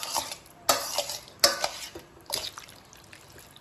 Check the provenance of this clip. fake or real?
real